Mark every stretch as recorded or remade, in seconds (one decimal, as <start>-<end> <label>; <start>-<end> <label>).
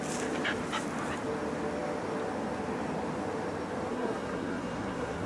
0.0-3.9 recorded; 3.9-5.3 remade